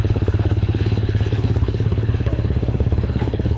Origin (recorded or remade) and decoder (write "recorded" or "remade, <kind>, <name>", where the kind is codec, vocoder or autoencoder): remade, codec, HILCodec